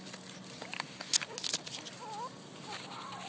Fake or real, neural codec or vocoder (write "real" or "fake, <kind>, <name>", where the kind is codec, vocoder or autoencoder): real